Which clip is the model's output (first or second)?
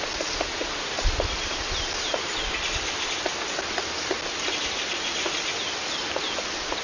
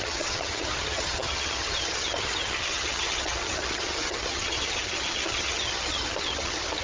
second